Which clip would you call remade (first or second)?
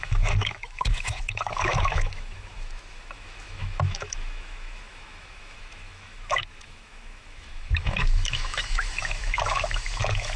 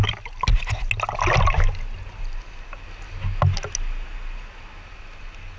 first